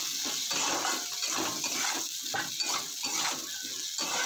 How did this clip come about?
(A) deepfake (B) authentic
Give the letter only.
B